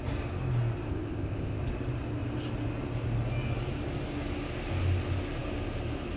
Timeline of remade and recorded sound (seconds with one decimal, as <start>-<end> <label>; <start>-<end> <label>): 0.0-0.9 recorded; 0.9-1.6 remade; 1.6-6.2 recorded

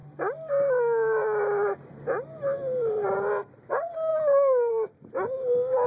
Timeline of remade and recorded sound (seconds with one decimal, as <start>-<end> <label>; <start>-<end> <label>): 0.0-5.9 recorded

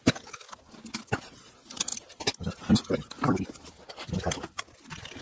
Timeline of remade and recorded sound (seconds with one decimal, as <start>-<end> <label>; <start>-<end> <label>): 0.0-5.2 recorded